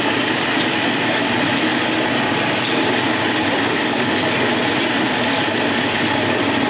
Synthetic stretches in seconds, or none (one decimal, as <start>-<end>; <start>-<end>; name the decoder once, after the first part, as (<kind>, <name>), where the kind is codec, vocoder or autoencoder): 3.6-4.1 (codec, DAC)